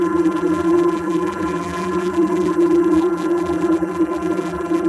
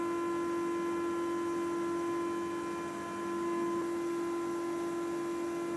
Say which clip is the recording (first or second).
second